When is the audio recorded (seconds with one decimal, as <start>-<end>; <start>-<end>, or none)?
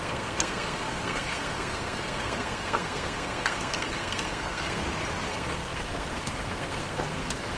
4.8-5.3